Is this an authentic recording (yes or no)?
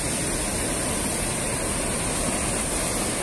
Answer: yes